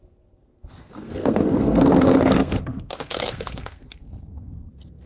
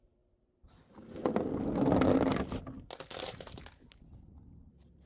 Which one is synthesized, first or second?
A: first